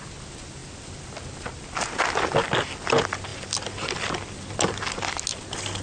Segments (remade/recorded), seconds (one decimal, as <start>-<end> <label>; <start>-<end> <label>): 0.0-5.8 recorded